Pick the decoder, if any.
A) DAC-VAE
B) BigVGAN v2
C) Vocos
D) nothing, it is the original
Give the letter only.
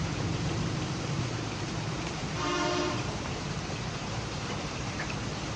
B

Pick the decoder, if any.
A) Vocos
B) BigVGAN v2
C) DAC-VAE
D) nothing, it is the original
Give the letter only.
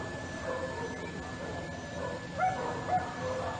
D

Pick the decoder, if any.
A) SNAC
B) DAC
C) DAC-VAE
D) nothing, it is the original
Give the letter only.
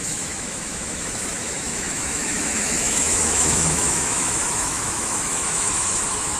C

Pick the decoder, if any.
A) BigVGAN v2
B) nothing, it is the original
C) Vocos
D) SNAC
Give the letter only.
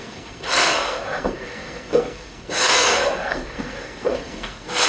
D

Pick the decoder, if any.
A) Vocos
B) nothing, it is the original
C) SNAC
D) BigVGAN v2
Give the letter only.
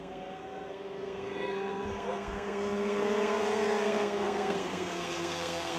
C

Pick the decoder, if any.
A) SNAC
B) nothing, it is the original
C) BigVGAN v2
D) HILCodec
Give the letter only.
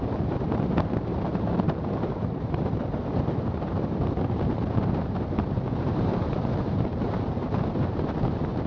C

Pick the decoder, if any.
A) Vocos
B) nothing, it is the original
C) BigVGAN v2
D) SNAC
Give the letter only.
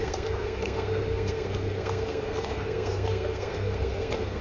D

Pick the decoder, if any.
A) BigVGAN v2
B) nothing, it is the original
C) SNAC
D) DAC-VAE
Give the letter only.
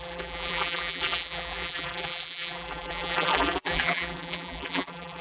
A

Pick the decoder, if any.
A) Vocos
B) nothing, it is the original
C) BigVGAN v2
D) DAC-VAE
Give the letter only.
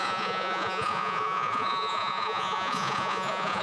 A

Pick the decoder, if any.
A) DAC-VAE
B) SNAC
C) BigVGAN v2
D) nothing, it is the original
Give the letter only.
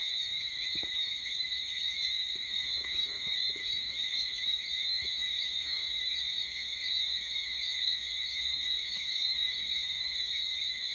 A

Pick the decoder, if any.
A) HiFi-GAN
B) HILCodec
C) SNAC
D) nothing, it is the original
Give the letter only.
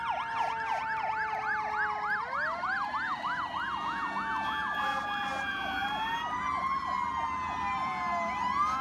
D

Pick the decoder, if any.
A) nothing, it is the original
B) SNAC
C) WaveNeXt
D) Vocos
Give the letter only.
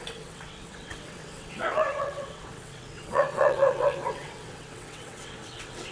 C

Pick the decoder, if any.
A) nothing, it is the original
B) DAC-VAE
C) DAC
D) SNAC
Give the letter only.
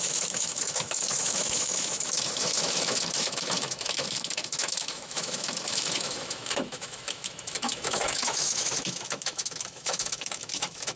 B